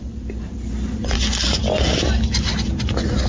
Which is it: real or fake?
real